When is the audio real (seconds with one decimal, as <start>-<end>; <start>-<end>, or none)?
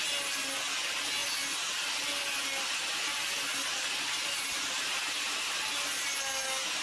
0.0-6.8